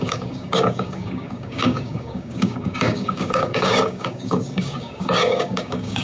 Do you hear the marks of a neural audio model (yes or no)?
yes